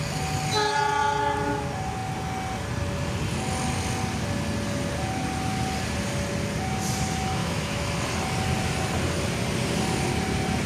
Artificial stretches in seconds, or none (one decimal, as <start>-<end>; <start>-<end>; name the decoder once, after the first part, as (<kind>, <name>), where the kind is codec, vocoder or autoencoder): 7.4-8.0 (autoencoder, DAC-VAE)